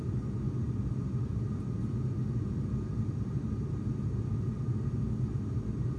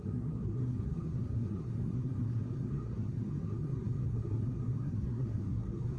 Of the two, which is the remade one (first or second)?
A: second